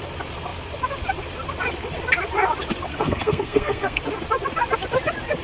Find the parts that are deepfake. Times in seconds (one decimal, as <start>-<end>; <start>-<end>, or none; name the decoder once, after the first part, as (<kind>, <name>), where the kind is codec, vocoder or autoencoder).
2.9-4.0 (codec, SNAC)